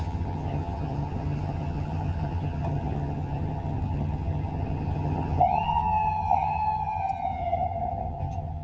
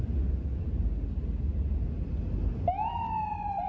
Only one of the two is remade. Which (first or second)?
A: first